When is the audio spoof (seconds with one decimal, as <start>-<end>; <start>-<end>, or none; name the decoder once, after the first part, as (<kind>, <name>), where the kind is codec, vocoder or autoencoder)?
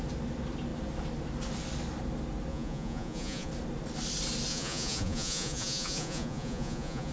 2.5-3.5 (vocoder, Vocos); 4.5-7.1